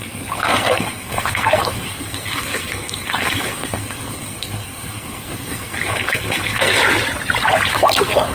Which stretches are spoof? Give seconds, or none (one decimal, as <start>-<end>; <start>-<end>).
0.0-6.8; 7.7-8.3